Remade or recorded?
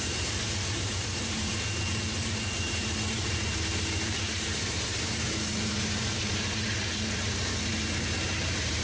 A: remade